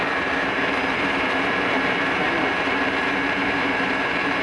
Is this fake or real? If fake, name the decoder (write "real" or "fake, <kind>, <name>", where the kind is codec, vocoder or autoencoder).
fake, vocoder, BigVGAN v2